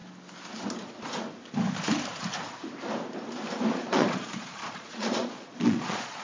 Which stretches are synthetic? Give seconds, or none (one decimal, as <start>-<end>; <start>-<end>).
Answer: 3.7-6.2